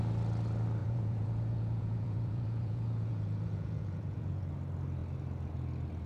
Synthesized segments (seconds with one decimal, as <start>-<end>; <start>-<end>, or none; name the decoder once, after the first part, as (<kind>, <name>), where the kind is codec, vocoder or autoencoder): 0.8-4.5 (vocoder, Vocos)